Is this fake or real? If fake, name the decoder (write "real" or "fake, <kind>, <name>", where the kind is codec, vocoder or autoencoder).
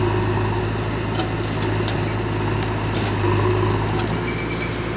real